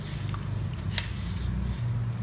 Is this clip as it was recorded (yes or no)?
yes